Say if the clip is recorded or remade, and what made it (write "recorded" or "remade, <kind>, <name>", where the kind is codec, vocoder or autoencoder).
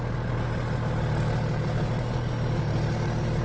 recorded